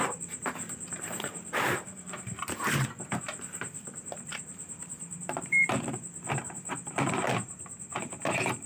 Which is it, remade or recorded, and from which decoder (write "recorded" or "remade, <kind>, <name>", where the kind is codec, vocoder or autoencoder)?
remade, vocoder, BigVGAN v2